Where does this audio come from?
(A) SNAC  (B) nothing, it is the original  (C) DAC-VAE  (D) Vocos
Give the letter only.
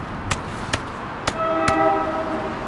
B